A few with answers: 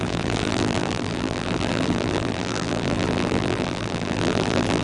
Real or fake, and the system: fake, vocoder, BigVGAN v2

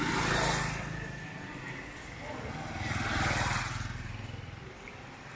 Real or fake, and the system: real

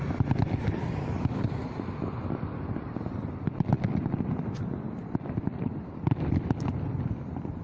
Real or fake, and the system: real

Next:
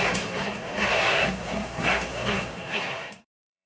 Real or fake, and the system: fake, codec, SNAC